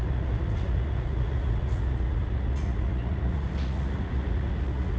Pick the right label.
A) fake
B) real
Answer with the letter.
A